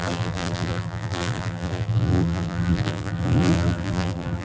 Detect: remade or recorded remade